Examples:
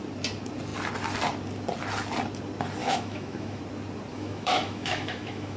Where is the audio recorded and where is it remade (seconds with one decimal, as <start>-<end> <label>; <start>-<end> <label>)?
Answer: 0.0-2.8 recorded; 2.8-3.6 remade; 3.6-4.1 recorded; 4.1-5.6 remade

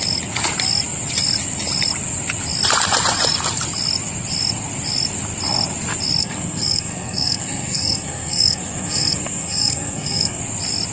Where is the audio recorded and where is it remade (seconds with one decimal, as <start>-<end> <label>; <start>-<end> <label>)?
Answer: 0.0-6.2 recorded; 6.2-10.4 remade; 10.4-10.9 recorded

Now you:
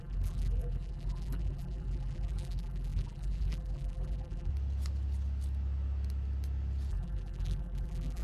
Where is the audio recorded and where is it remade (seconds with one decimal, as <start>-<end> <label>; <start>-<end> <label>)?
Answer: 0.0-4.5 remade; 4.5-6.9 recorded; 6.9-8.2 remade

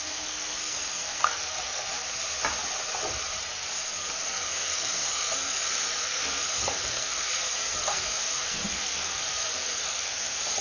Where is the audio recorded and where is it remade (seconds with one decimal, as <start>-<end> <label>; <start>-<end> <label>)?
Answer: 0.0-2.2 remade; 2.2-3.4 recorded; 3.4-10.6 remade

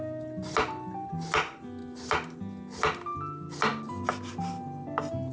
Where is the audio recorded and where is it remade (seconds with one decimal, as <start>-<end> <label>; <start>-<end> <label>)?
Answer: 0.0-5.3 recorded

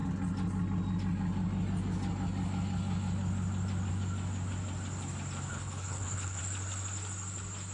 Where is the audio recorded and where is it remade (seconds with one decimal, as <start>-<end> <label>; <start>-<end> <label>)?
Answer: 0.0-5.5 recorded; 5.5-6.4 remade; 6.4-7.7 recorded